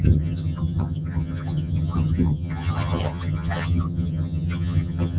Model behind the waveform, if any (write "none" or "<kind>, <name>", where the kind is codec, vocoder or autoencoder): vocoder, HiFi-GAN